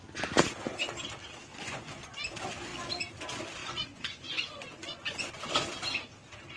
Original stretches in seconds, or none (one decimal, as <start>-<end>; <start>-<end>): 0.0-1.5; 2.0-3.6; 5.3-6.6